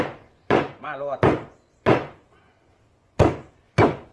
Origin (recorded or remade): remade